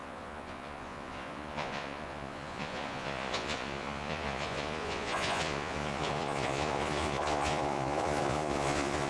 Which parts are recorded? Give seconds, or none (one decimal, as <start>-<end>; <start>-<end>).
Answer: none